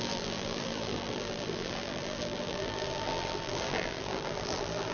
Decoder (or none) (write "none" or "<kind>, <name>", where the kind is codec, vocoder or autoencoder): vocoder, BigVGAN v2